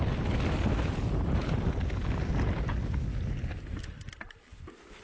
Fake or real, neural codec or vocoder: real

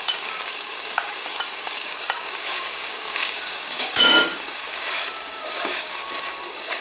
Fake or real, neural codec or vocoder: fake, codec, DAC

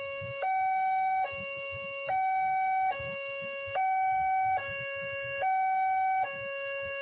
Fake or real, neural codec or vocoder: fake, codec, DAC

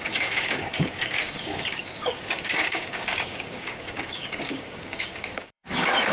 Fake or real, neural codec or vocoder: fake, codec, DAC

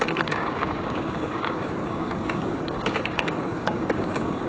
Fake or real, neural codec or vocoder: fake, codec, DAC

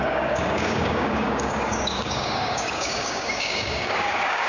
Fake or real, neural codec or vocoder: fake, codec, DAC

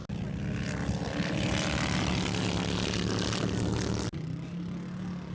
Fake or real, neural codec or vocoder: real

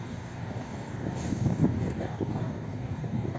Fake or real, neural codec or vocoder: fake, codec, DAC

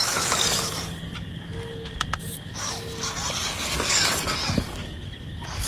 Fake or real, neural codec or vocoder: fake, codec, DAC